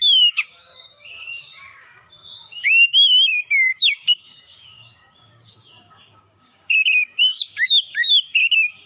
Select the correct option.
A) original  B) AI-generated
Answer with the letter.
B